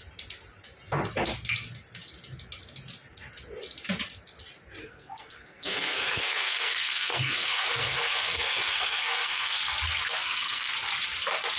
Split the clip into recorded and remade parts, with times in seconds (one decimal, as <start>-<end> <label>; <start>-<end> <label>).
0.0-4.8 recorded; 4.8-9.6 remade; 9.6-10.2 recorded; 10.2-10.7 remade; 10.7-11.6 recorded